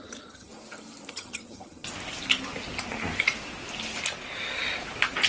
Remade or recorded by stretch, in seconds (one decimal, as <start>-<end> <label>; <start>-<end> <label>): 0.0-0.5 remade; 0.5-1.1 recorded; 1.1-1.9 remade; 1.9-5.3 recorded